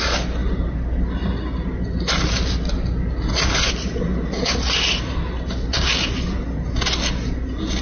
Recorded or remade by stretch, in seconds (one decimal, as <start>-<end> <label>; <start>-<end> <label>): 0.0-7.8 recorded